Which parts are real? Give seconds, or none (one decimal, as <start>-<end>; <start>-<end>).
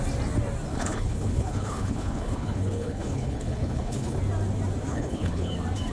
0.0-0.7; 4.2-4.9; 5.5-5.9